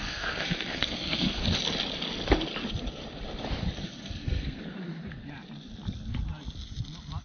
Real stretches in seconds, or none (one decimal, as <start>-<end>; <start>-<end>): 1.4-3.8; 4.6-7.2